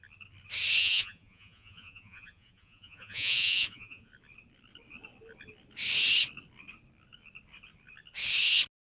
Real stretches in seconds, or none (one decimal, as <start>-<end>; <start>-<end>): 0.0-0.8; 4.1-8.9